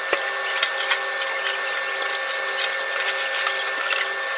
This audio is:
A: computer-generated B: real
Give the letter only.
B